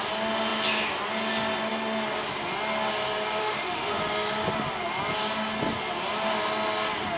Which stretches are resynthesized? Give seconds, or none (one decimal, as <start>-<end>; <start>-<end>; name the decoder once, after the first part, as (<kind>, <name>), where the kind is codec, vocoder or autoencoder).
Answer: 3.4-4.0 (autoencoder, DAC-VAE)